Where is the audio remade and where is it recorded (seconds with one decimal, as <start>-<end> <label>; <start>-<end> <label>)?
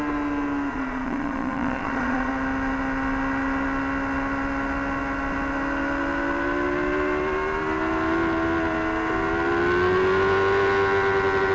0.0-0.7 recorded; 0.7-2.3 remade; 2.3-11.5 recorded